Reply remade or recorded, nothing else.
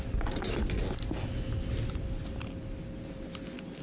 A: recorded